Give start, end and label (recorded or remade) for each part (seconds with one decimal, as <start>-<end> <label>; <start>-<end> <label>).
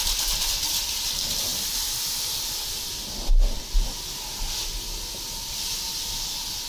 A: 0.0-6.7 recorded